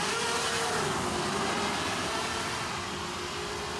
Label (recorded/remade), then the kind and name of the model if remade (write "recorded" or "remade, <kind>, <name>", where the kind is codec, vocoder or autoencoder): recorded